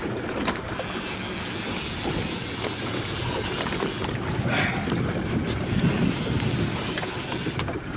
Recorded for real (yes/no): yes